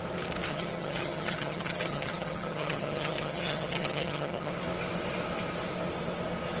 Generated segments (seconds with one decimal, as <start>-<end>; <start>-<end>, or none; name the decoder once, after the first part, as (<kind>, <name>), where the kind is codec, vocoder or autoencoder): 0.5-4.5 (vocoder, HiFi-GAN)